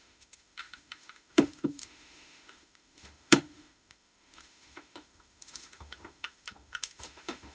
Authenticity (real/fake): fake